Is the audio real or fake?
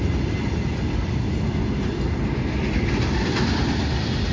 real